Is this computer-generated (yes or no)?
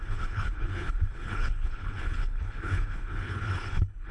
yes